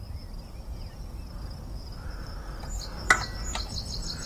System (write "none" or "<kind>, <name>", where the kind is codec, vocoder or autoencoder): none